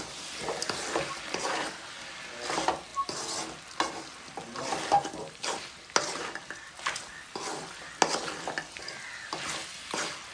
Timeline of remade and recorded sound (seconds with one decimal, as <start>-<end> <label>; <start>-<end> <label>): 0.0-10.3 recorded